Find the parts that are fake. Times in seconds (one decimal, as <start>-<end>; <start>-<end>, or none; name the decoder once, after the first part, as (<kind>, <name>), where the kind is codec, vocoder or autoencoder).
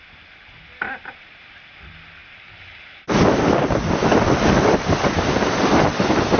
none